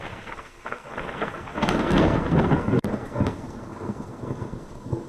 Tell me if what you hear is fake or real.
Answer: fake